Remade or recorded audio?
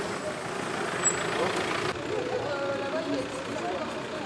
recorded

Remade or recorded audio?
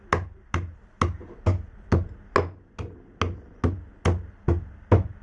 recorded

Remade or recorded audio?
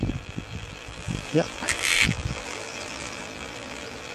remade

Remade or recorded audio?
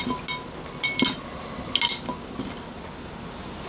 recorded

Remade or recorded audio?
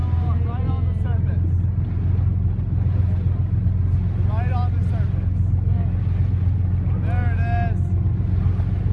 recorded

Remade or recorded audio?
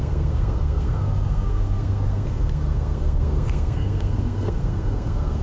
remade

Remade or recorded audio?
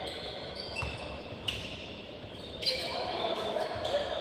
remade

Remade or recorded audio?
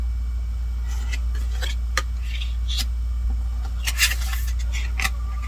recorded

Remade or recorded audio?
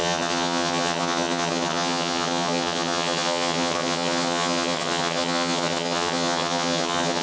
remade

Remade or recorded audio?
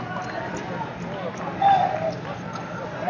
recorded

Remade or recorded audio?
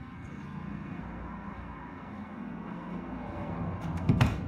remade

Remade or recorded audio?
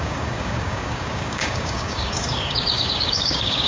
remade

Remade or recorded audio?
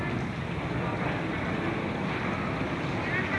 recorded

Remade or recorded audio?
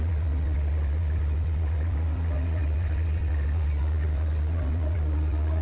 remade